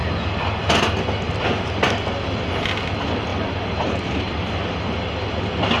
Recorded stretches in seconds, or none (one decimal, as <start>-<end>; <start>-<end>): 0.0-3.3; 4.4-5.8